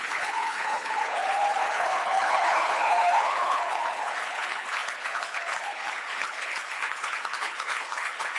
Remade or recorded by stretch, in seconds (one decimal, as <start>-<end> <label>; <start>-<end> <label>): 0.0-8.4 remade

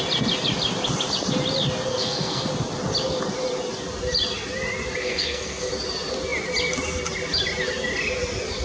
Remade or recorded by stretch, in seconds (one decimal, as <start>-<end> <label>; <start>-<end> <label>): 0.0-1.9 recorded; 1.9-2.5 remade; 2.5-5.0 recorded; 5.0-5.7 remade; 5.7-8.6 recorded

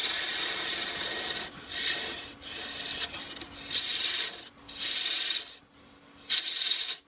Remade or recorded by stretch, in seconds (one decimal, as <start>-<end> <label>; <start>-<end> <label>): 0.0-7.1 recorded

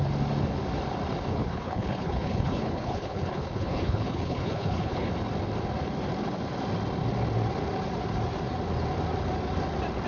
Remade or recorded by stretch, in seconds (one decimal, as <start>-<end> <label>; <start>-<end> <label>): 0.0-1.3 recorded; 1.3-5.1 remade; 5.1-10.1 recorded

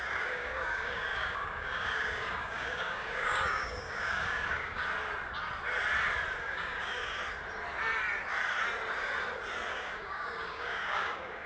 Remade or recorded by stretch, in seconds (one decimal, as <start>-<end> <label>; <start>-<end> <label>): 0.0-4.8 remade; 4.8-6.4 recorded; 6.4-7.2 remade; 7.2-9.7 recorded; 9.7-11.5 remade

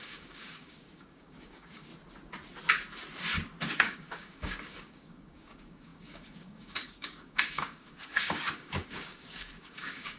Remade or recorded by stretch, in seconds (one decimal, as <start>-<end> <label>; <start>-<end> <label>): 0.0-1.9 remade; 1.9-3.8 recorded; 3.8-10.2 remade

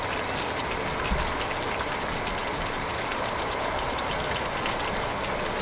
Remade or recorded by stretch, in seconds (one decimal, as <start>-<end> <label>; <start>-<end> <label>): 0.0-2.5 recorded; 2.5-4.1 remade; 4.1-5.6 recorded

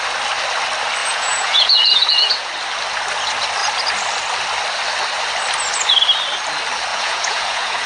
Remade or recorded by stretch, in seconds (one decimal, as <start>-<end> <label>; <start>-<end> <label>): 0.0-1.0 recorded; 1.0-2.5 remade; 2.5-6.9 recorded; 6.9-7.9 remade